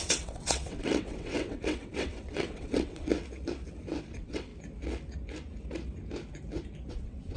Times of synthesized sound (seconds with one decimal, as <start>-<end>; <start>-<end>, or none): 0.0-3.1; 4.0-4.5; 6.9-7.4